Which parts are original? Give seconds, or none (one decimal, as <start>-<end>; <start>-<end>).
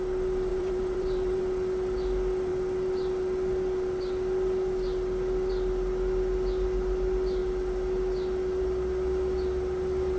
0.0-0.5; 1.4-10.2